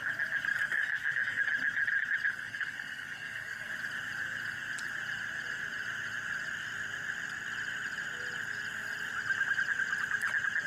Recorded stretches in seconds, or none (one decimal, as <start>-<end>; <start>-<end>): 0.0-0.5; 1.4-2.3; 3.7-10.7